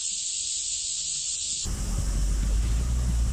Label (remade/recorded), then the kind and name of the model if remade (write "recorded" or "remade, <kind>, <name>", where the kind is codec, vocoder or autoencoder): recorded